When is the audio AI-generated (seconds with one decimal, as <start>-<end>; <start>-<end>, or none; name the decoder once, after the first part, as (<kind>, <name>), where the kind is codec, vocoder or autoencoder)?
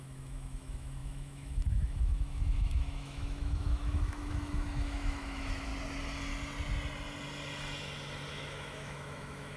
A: 0.0-5.7 (autoencoder, DAC-VAE); 8.3-9.6